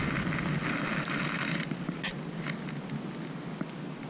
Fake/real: real